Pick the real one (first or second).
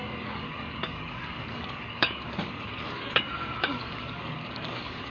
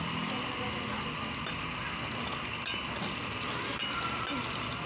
second